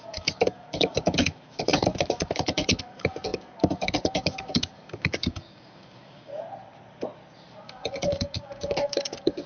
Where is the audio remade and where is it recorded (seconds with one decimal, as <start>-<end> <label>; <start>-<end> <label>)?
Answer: 0.0-6.3 remade; 6.3-7.5 recorded; 7.5-9.5 remade